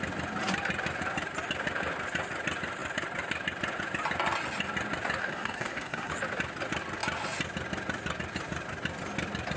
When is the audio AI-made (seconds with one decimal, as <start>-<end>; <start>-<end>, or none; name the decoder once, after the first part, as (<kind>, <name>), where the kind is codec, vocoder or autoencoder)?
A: 5.2-6.1 (codec, SNAC)